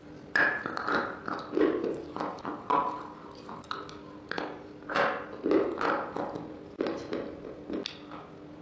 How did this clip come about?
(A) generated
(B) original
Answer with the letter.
B